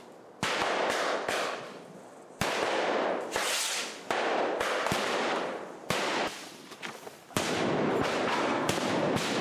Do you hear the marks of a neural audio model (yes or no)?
no